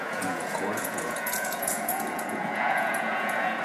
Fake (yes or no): yes